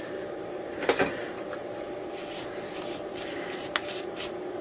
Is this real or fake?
real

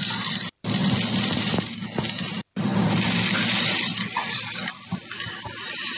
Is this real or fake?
fake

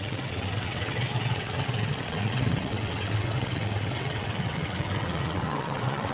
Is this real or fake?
fake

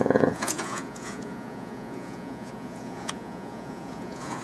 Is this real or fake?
fake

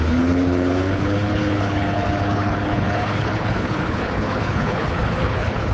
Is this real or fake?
fake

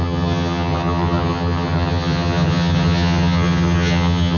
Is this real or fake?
fake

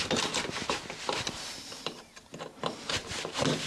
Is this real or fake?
real